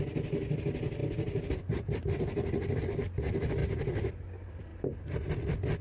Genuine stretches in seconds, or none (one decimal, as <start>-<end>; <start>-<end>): 0.0-1.0; 2.8-5.8